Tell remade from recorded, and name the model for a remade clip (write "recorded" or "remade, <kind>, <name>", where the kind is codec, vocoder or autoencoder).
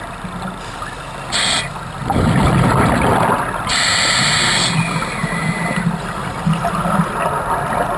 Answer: recorded